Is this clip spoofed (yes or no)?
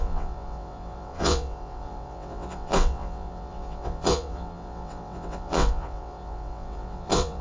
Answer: yes